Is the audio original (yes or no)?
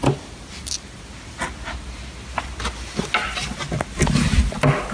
yes